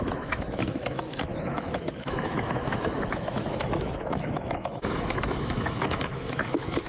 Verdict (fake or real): fake